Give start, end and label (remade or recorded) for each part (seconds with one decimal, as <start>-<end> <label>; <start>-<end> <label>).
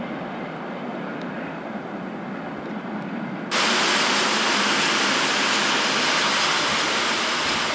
0.0-7.7 recorded